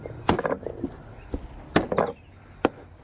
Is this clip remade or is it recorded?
recorded